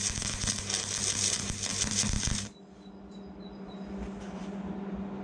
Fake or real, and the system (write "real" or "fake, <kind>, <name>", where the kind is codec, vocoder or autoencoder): real